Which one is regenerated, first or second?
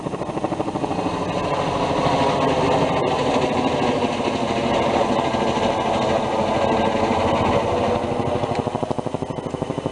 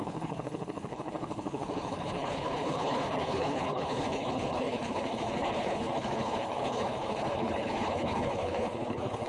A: second